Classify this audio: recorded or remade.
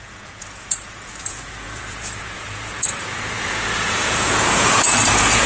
remade